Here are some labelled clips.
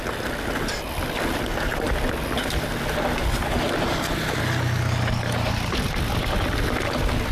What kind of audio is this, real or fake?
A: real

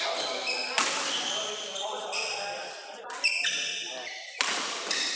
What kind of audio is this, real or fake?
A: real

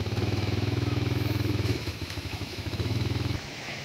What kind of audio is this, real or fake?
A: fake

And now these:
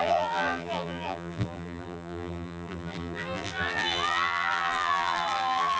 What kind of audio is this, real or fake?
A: fake